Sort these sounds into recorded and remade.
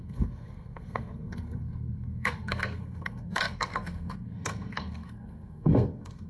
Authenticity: remade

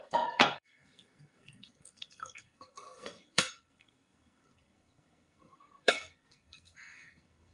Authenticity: remade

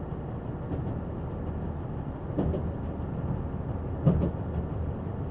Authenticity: recorded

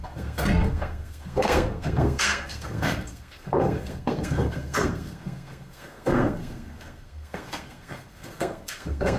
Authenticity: remade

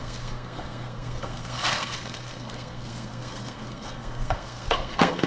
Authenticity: remade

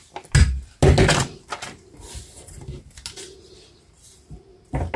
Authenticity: recorded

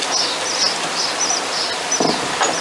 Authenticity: recorded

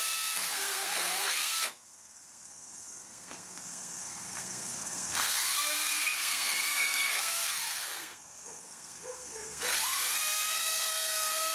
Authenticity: remade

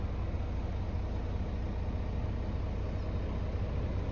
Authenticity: recorded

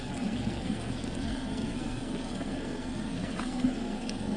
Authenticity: remade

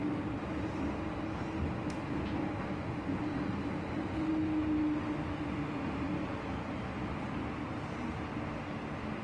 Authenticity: recorded